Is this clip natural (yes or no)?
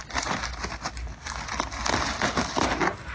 yes